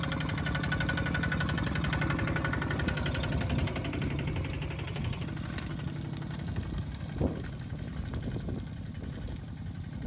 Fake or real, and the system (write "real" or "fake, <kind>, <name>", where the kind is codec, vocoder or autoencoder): real